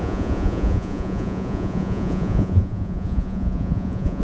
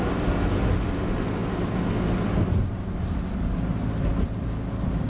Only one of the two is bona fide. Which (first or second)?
second